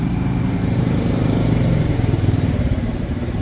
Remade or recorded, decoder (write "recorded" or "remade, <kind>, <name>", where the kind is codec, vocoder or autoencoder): remade, vocoder, BigVGAN v2